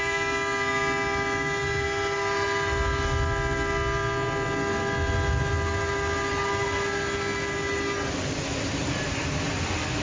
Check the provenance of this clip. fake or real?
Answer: real